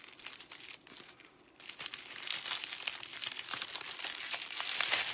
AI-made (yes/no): no